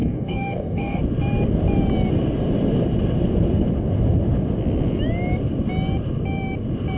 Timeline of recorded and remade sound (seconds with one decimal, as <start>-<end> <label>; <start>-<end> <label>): 0.0-1.0 remade; 1.0-7.0 recorded